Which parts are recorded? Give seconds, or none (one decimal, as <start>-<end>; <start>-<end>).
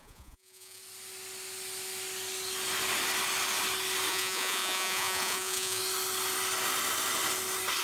0.8-4.1; 5.8-7.8